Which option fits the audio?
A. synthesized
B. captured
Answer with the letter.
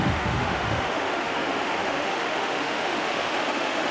A